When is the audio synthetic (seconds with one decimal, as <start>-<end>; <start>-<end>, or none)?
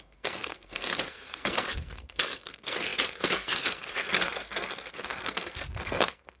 0.0-6.4